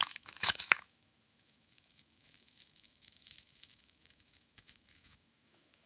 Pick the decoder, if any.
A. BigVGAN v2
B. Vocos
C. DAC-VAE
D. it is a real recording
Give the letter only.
C